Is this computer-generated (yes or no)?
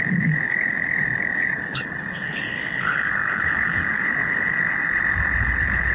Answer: yes